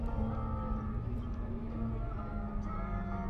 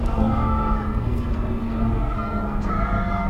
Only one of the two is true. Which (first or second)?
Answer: first